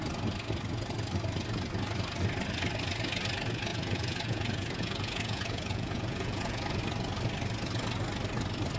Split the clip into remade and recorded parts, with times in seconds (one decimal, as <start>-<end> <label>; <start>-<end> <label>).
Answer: 0.0-3.7 recorded; 3.7-6.8 remade; 6.8-8.8 recorded